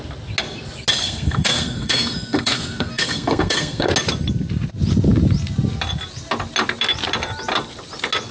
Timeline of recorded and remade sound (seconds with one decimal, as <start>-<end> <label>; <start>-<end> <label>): 0.0-1.0 recorded; 1.0-3.9 remade; 3.9-8.3 recorded